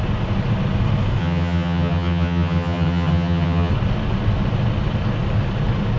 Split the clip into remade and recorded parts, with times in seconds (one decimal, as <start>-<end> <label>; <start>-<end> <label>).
0.0-1.2 recorded; 1.2-3.7 remade; 3.7-6.0 recorded